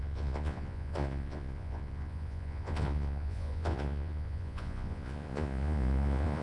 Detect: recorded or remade remade